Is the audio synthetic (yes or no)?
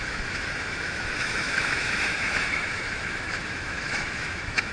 yes